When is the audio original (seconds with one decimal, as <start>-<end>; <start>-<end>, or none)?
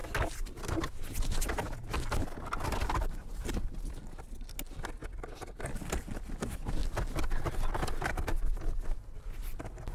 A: 0.0-9.9